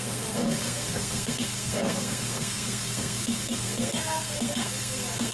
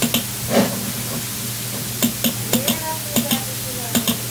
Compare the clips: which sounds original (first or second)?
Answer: second